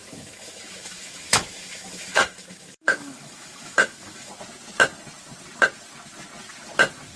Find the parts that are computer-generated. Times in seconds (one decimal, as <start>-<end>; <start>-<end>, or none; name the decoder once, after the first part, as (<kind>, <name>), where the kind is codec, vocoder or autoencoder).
0.0-4.3 (autoencoder, DAC-VAE)